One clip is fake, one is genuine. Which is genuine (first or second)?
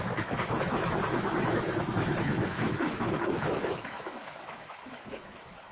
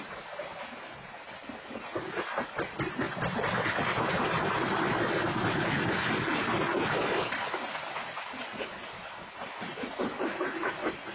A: second